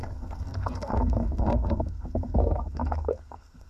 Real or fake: fake